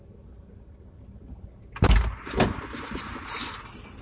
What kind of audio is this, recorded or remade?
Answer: recorded